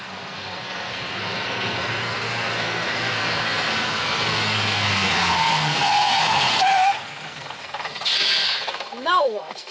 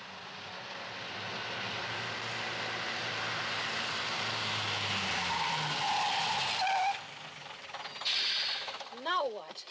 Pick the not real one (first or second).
first